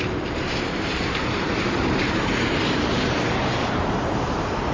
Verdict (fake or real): fake